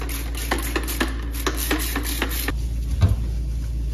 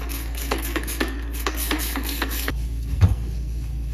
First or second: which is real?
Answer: first